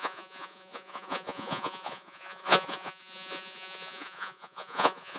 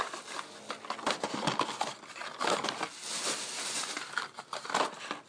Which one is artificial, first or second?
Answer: first